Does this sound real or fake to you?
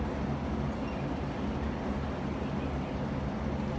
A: real